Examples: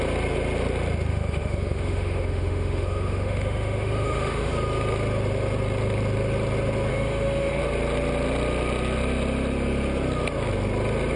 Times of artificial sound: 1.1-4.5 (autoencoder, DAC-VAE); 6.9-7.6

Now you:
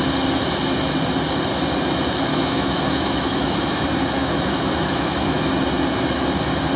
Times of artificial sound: 2.3-3.8 (autoencoder, DAC-VAE); 4.2-5.5

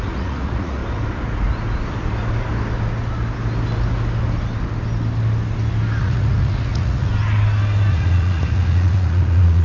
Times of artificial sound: 0.0-0.8 (vocoder, Vocos); 6.0-7.1; 7.9-9.6